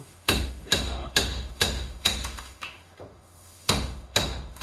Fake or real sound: fake